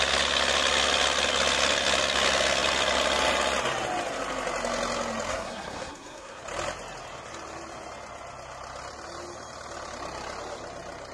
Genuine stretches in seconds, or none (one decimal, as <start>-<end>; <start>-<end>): 0.0-5.3; 6.4-11.1